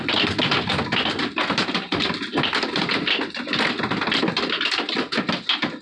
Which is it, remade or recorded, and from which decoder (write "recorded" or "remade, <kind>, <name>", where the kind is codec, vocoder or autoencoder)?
recorded